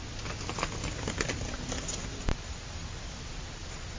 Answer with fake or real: real